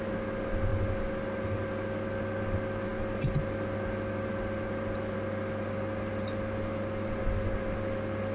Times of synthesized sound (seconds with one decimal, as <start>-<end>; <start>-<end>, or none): none